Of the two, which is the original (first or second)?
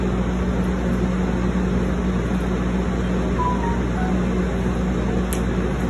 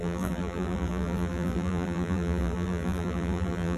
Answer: first